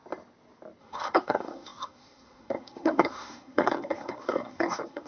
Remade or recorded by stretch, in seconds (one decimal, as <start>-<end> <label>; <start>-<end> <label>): 0.0-0.8 recorded; 0.8-5.1 remade